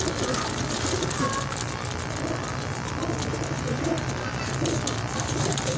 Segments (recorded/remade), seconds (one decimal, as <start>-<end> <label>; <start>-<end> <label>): 0.0-3.3 recorded; 3.3-4.0 remade; 4.0-5.8 recorded